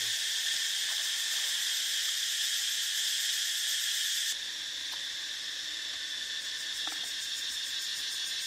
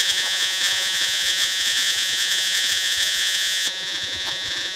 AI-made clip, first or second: second